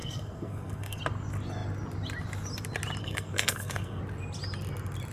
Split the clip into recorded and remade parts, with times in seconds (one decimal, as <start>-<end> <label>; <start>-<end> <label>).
0.0-1.0 remade; 1.0-3.0 recorded; 3.0-4.0 remade; 4.0-5.1 recorded